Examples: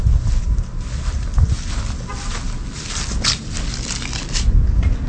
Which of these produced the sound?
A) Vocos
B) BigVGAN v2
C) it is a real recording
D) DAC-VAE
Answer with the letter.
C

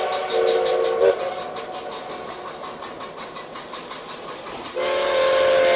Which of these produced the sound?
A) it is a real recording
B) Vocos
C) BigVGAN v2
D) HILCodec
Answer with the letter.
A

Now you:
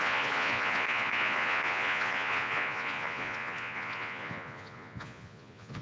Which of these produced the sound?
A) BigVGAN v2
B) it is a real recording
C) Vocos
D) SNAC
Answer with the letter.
C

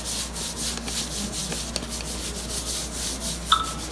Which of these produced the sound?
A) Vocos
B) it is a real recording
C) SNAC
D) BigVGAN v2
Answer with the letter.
B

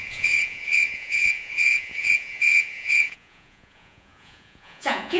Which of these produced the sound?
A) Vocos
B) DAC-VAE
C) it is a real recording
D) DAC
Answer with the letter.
A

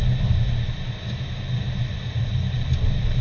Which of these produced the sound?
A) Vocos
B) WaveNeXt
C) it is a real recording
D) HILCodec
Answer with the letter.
C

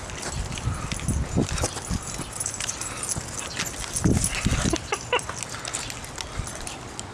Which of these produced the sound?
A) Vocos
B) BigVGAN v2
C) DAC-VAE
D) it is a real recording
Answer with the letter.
D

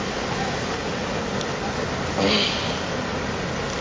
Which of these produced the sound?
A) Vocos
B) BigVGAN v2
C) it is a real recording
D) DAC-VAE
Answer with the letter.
C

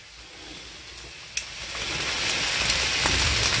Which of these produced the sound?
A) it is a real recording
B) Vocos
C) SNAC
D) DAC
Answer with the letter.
A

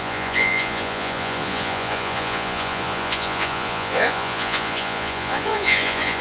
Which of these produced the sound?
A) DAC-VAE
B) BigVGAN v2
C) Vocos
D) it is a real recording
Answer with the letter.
C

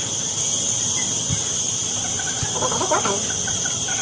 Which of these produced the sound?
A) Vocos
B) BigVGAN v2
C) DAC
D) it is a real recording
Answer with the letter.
D